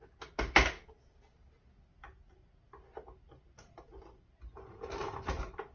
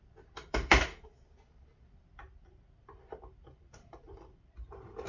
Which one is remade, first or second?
second